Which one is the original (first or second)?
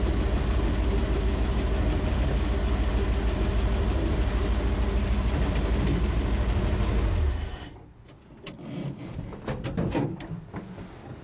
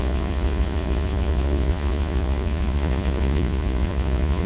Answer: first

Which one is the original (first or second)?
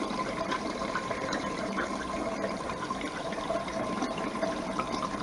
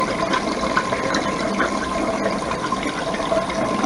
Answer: second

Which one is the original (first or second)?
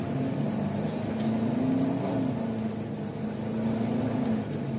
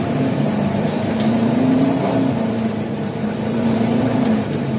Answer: first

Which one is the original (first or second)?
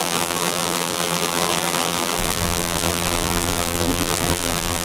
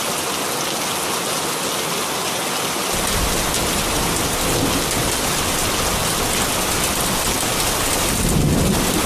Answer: second